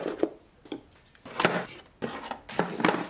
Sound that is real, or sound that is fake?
real